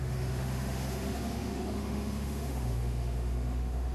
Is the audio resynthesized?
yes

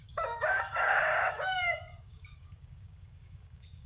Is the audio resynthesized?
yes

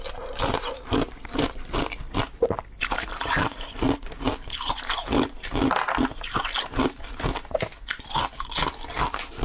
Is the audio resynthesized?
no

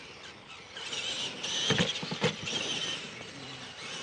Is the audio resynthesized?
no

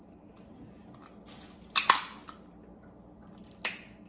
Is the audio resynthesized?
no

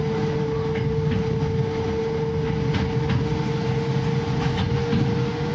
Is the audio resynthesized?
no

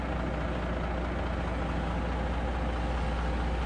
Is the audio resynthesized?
no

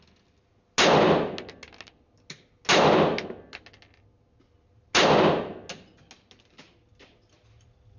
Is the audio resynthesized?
no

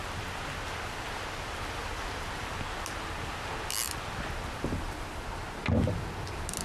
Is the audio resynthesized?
no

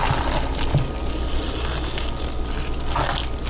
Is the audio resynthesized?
no